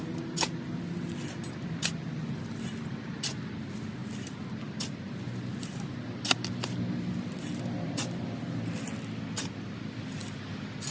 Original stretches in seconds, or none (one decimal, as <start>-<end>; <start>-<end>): 0.0-10.9